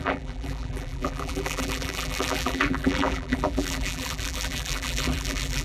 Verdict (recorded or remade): remade